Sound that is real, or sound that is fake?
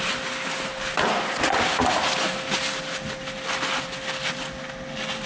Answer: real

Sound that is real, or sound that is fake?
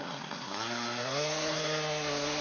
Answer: fake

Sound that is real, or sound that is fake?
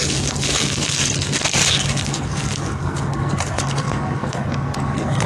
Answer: fake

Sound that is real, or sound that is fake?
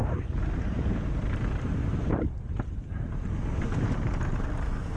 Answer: real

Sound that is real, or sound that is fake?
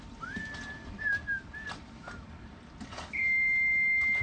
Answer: real